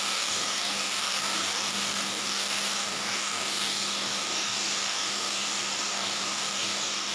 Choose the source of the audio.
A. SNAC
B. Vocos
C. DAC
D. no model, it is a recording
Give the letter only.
C